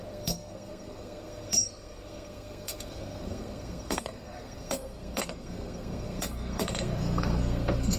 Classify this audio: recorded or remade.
remade